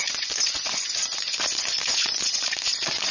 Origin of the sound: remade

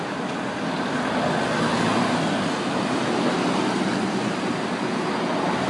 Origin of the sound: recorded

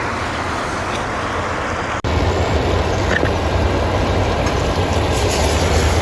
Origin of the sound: recorded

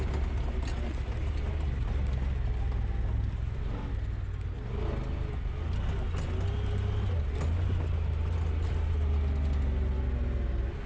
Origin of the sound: recorded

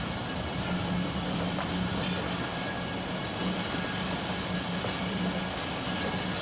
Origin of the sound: recorded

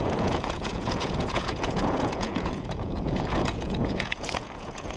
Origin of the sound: remade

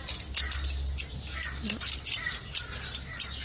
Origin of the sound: recorded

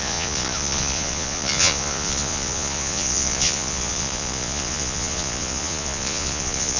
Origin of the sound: remade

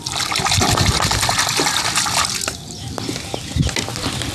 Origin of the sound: recorded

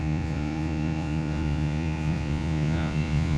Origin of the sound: remade